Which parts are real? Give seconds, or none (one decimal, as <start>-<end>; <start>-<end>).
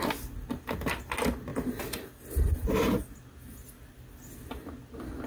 0.0-5.3